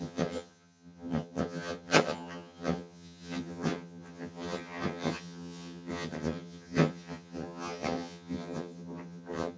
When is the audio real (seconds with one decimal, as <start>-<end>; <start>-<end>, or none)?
none